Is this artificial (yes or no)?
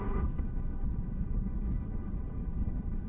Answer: yes